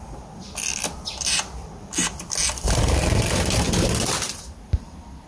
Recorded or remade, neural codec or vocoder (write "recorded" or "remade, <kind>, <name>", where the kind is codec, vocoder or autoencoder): recorded